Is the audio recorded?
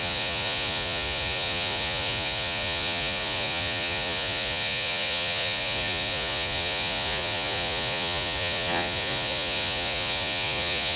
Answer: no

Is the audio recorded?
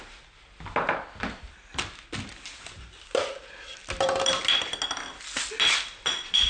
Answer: yes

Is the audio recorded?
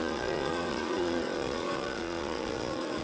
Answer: no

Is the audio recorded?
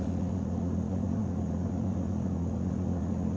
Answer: no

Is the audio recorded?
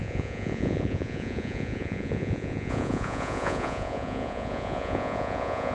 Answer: no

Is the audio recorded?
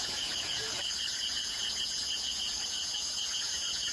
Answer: no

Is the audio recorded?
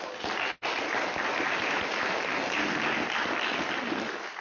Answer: yes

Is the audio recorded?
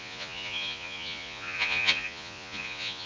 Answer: no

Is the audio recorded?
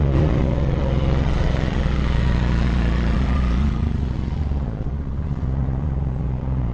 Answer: no